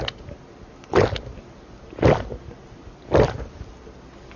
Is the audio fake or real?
real